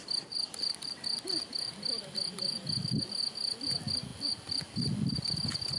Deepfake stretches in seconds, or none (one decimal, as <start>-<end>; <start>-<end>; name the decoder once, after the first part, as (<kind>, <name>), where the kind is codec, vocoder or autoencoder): none